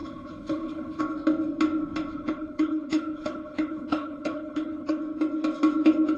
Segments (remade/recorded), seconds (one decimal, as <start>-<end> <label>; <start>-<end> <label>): 0.0-1.0 remade; 1.0-2.1 recorded; 2.1-5.0 remade; 5.0-6.2 recorded